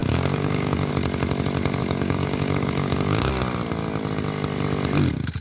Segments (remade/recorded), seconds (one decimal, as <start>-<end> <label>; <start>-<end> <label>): 0.0-0.9 remade; 0.9-1.8 recorded; 1.8-3.3 remade; 3.3-5.4 recorded